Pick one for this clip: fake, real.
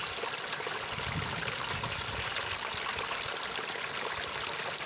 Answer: real